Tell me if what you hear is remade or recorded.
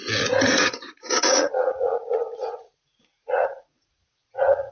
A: remade